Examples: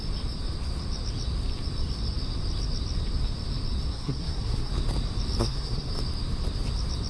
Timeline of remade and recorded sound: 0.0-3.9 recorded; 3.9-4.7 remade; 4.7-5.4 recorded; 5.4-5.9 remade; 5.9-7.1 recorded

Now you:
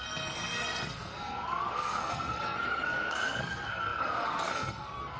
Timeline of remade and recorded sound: 0.0-5.2 remade

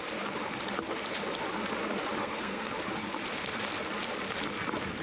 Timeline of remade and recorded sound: 0.0-2.2 recorded; 2.2-2.7 remade; 2.7-5.0 recorded

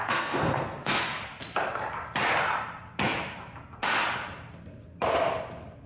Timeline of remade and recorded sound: 0.0-1.2 remade; 1.2-5.9 recorded